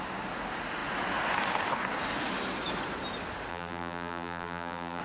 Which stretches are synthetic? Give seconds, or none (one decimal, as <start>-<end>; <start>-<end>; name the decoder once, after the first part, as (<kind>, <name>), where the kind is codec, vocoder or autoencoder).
3.5-5.0 (vocoder, BigVGAN v2)